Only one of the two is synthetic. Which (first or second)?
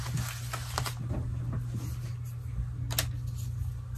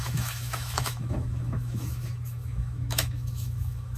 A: second